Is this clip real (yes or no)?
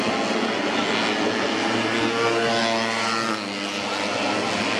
yes